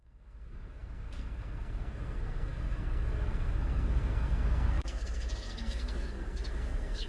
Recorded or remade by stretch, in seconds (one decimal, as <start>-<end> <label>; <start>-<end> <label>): 0.0-7.1 remade